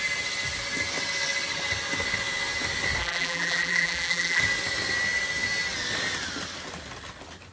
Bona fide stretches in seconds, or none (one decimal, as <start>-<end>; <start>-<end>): 0.0-3.0; 4.4-7.5